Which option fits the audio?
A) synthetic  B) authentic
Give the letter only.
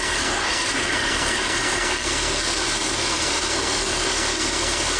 A